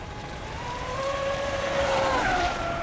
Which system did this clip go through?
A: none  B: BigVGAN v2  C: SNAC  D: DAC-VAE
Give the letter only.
B